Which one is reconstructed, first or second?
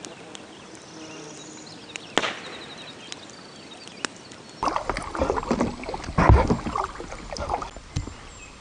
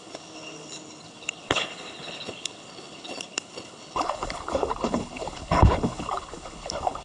second